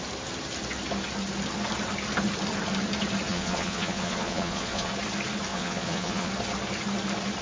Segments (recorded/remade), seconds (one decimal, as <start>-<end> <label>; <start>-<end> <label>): 0.0-3.3 recorded; 3.3-4.9 remade; 4.9-5.5 recorded; 5.5-6.3 remade; 6.3-7.4 recorded